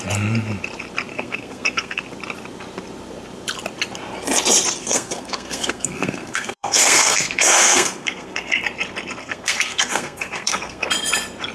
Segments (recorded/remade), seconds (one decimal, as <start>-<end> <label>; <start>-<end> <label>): 0.0-1.1 recorded; 1.1-2.0 remade; 2.0-4.8 recorded; 4.8-8.6 remade; 8.6-9.2 recorded; 9.2-10.9 remade; 10.9-11.5 recorded